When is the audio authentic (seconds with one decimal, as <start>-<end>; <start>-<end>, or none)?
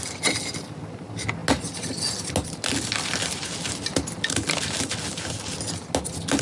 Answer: 0.0-6.4